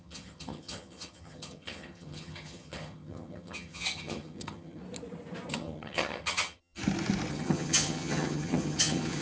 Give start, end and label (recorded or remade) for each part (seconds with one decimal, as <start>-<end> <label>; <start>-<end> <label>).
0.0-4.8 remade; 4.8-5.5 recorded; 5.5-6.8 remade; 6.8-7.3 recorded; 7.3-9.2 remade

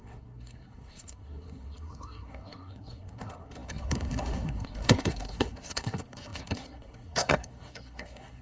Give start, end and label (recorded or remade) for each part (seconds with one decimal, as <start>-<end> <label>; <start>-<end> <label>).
0.0-8.4 remade

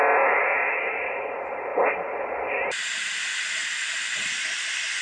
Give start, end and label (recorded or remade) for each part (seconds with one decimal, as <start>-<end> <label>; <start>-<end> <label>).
0.0-5.0 recorded

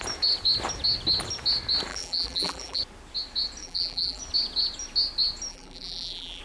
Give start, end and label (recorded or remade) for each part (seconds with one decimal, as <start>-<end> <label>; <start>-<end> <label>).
0.0-1.9 recorded; 1.9-2.8 remade; 2.8-3.6 recorded; 3.6-4.2 remade; 4.2-5.5 recorded; 5.5-6.4 remade

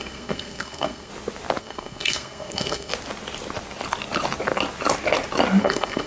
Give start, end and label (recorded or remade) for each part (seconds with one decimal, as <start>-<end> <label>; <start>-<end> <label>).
0.0-1.1 remade; 1.1-1.6 recorded; 1.6-2.9 remade; 2.9-5.6 recorded; 5.6-6.1 remade

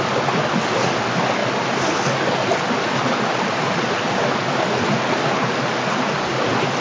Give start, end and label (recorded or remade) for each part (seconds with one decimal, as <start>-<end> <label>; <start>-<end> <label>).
0.0-6.8 recorded